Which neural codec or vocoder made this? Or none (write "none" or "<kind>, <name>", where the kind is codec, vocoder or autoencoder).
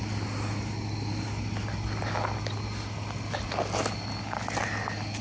none